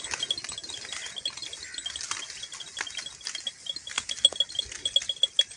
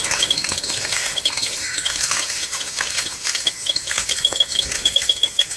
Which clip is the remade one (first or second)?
second